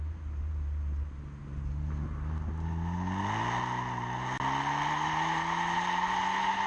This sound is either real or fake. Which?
real